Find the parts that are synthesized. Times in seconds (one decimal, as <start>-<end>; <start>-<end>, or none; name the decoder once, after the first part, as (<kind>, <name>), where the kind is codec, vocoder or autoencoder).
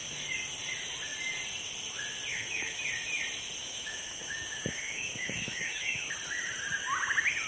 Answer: 2.3-2.8 (autoencoder, DAC-VAE); 3.6-6.1